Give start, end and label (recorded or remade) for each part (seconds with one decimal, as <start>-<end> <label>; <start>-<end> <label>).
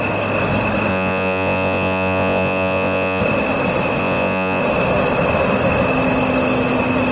0.0-0.9 recorded; 0.9-3.2 remade; 3.2-4.0 recorded; 4.0-4.6 remade; 4.6-7.1 recorded